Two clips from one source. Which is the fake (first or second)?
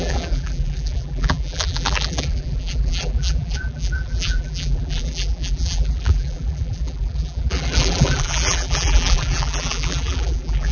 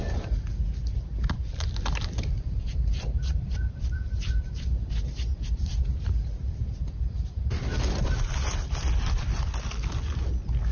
first